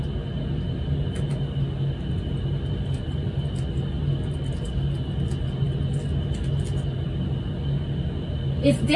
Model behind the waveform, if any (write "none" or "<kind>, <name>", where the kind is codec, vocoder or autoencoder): none